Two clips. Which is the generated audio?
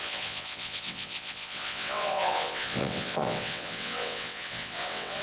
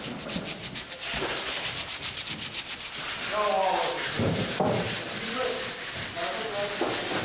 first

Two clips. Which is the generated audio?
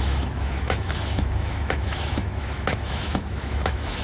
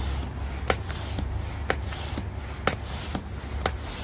first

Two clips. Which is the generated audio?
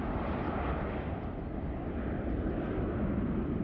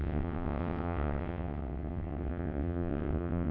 second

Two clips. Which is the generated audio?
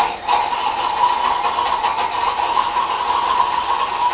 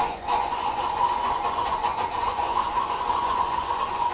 second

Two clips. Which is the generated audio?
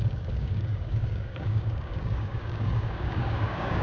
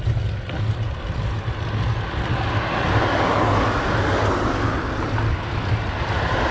first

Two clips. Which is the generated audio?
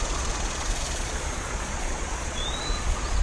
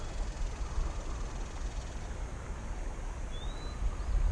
first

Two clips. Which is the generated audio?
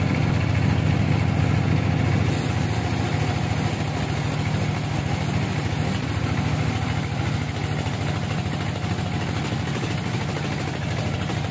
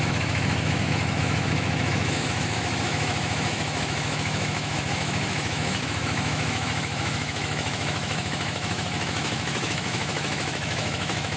second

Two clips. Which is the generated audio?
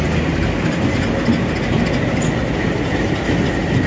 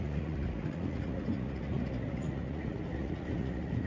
second